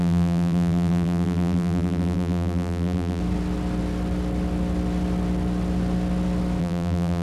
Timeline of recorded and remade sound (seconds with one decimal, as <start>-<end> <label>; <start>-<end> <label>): 0.0-3.2 remade; 3.2-6.6 recorded; 6.6-7.2 remade